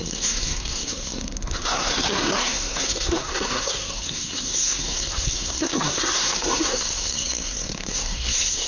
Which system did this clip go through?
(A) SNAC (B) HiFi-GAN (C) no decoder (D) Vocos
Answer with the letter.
A